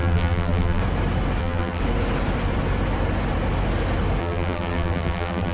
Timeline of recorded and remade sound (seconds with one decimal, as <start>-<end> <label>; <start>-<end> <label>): 0.0-0.8 remade; 0.8-1.4 recorded; 1.4-1.8 remade; 1.8-4.2 recorded; 4.2-5.5 remade